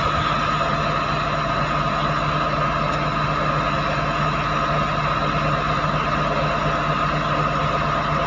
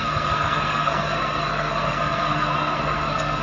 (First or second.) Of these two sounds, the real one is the first